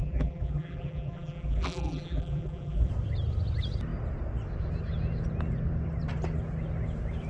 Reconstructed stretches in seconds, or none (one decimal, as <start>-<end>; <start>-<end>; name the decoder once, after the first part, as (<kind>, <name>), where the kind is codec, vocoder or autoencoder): 0.0-2.9 (vocoder, BigVGAN v2)